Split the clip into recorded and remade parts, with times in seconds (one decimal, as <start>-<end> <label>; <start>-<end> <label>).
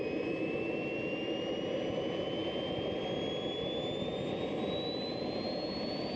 0.0-6.2 recorded